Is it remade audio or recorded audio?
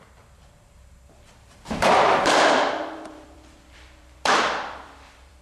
remade